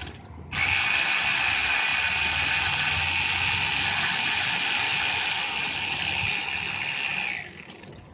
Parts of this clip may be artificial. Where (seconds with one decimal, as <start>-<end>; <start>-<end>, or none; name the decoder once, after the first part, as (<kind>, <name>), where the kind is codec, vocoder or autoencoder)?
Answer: none